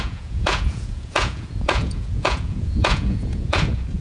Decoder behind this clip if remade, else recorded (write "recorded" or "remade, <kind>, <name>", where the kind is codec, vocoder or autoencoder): remade, vocoder, Vocos